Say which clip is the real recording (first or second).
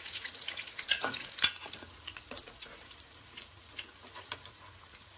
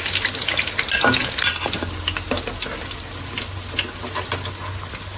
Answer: second